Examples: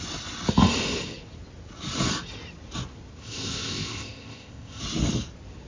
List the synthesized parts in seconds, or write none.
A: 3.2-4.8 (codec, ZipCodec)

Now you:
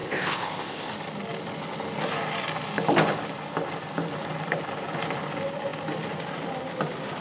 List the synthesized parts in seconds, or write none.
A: 0.0-0.9 (codec, ZipCodec)

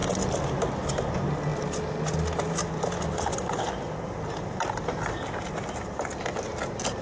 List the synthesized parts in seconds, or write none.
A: none

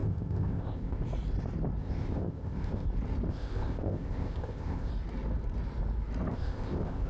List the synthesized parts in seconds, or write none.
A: 0.0-1.0 (codec, ZipCodec); 1.8-2.9; 3.3-4.9; 6.3-7.1

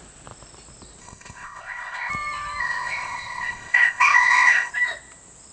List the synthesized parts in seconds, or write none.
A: 1.0-2.1 (codec, ZipCodec); 2.6-4.7

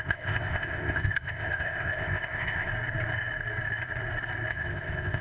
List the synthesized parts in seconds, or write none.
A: 0.0-2.7 (codec, ZipCodec); 4.5-5.2

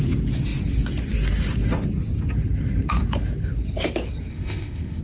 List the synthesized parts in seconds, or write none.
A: 4.3-5.0 (codec, ZipCodec)